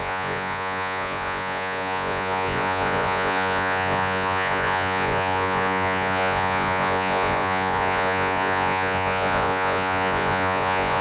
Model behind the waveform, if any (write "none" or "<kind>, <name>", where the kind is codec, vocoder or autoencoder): vocoder, Vocos